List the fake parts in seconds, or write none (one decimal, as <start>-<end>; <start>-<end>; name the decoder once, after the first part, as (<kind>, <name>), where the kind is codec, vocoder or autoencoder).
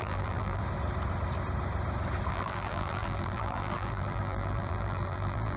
0.0-0.6 (vocoder, BigVGAN v2); 2.3-5.6